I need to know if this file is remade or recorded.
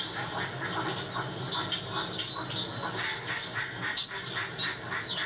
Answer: recorded